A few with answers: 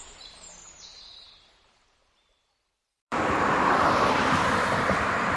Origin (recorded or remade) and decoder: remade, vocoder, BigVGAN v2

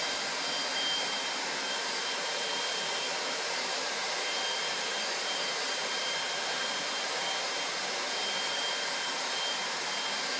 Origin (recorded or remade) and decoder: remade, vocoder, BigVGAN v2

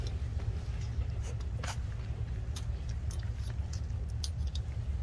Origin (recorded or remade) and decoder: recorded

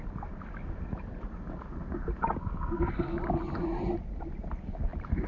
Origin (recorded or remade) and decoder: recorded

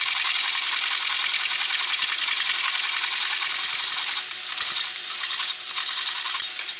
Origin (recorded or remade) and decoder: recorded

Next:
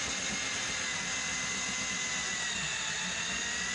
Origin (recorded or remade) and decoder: recorded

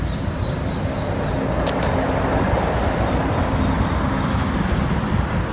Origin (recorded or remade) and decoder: recorded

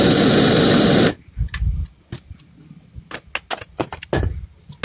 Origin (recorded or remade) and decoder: recorded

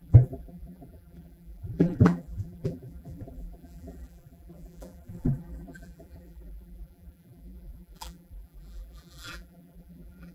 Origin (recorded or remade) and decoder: remade, vocoder, BigVGAN v2